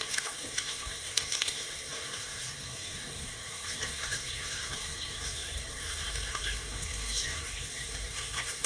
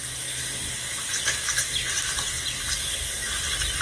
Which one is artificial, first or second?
first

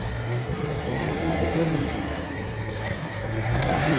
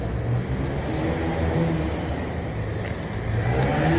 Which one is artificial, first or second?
first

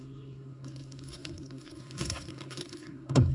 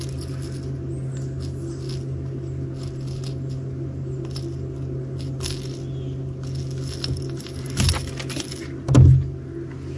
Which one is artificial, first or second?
first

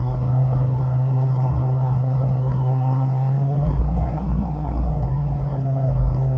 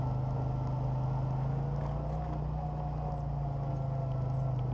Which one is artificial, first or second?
first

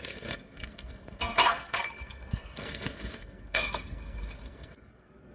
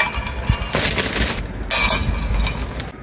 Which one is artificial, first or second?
first